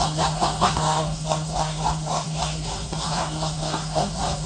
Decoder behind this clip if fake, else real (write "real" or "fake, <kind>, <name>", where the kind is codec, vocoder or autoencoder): fake, codec, SNAC